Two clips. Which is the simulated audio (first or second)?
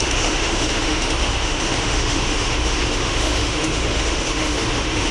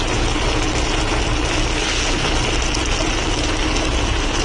first